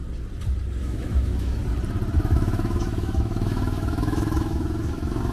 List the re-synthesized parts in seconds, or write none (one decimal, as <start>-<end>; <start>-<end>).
0.8-1.6; 2.2-5.3